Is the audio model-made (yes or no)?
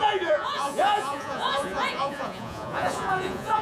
yes